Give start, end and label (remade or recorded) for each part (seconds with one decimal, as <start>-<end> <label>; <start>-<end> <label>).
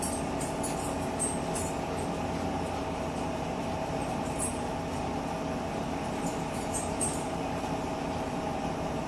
0.0-4.7 remade; 4.7-5.5 recorded; 5.5-9.1 remade